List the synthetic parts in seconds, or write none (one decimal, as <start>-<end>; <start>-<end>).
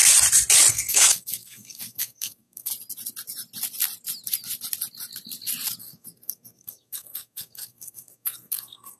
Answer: 0.7-2.7; 5.8-9.0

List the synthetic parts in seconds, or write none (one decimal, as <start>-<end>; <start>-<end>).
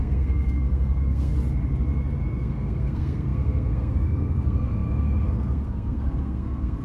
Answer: 0.0-1.3; 2.4-6.8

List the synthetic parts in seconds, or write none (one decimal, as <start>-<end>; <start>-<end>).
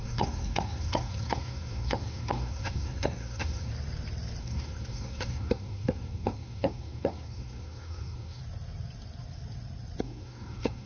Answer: 0.0-3.7; 4.4-8.4; 10.0-10.9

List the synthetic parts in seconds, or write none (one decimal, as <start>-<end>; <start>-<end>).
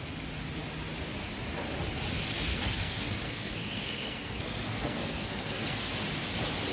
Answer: 2.5-5.9